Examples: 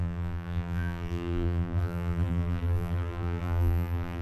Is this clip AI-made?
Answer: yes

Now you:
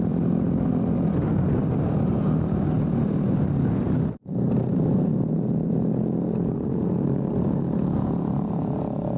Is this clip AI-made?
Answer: yes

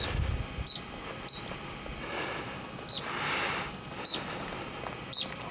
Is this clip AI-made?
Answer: no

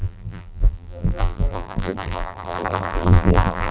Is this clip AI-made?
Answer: yes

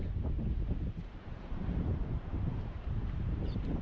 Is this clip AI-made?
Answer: yes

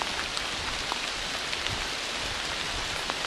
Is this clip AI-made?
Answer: no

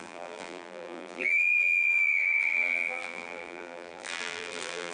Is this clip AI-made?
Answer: yes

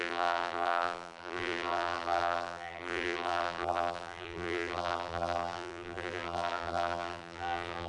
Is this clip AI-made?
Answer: yes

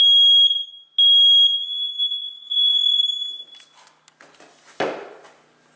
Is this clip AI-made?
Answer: no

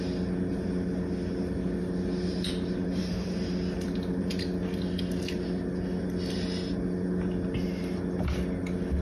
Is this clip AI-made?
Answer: no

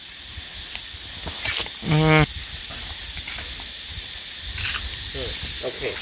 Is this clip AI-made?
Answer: no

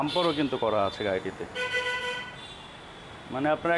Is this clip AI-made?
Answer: no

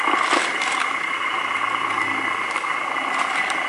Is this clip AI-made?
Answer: no